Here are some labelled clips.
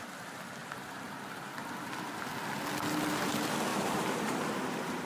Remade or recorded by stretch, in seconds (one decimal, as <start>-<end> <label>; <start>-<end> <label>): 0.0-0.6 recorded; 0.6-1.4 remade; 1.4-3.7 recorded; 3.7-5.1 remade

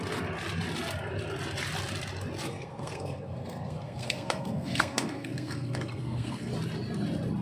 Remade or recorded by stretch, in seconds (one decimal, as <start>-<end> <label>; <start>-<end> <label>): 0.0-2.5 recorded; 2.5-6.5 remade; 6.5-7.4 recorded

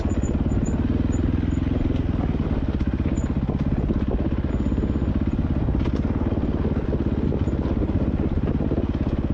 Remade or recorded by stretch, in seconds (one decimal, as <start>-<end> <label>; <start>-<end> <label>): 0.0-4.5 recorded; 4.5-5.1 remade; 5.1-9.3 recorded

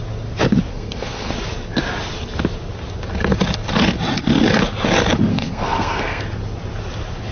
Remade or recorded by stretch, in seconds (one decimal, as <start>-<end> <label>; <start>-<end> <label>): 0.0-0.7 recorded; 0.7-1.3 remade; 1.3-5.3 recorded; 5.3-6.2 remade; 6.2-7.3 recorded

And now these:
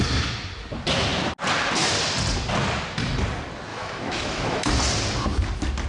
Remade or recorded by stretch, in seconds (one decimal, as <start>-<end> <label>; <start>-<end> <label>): 0.0-3.7 recorded; 3.7-4.7 remade; 4.7-5.9 recorded

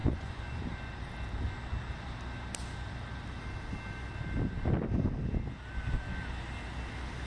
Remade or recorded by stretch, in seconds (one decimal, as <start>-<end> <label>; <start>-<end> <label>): 0.0-0.6 remade; 0.6-7.3 recorded

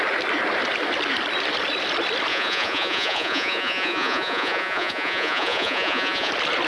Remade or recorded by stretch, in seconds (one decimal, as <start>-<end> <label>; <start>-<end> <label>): 0.0-2.3 recorded; 2.3-6.3 remade; 6.3-6.7 recorded